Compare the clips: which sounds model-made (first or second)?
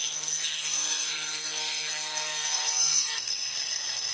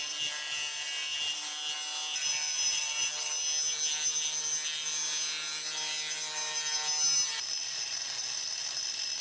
first